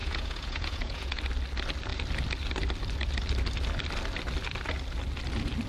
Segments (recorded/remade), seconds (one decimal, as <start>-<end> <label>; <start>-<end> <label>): 0.0-1.2 remade; 1.2-5.7 recorded